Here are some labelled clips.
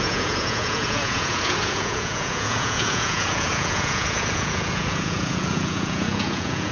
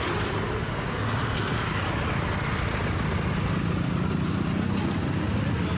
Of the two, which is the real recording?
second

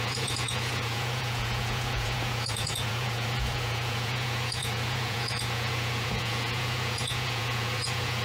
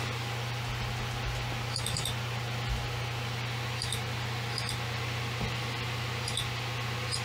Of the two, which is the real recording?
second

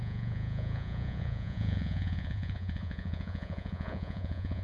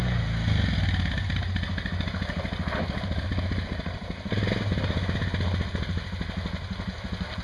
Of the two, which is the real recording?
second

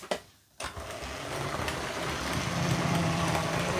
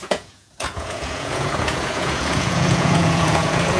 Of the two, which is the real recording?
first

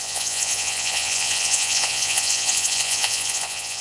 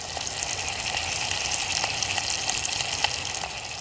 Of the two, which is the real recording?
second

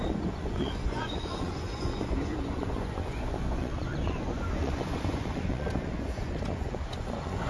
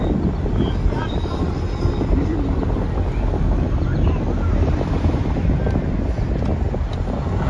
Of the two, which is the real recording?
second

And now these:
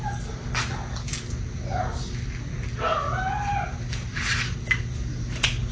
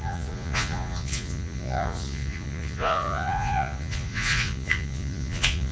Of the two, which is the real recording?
first